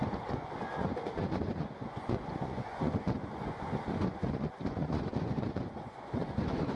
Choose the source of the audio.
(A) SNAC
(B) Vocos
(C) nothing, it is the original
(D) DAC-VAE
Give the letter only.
B